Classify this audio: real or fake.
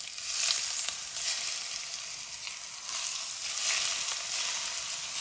real